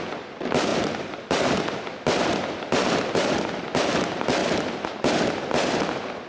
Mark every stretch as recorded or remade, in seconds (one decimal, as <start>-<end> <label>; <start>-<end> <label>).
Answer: 0.0-0.7 recorded; 0.7-3.3 remade; 3.3-4.4 recorded; 4.4-5.1 remade; 5.1-6.3 recorded